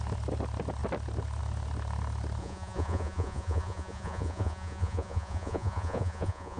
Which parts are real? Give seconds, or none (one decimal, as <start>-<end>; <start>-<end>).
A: 0.0-2.4